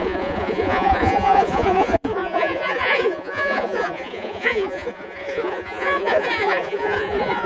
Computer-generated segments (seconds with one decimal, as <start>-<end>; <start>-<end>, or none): 0.0-7.5